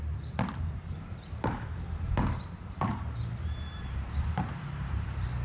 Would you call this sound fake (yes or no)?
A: yes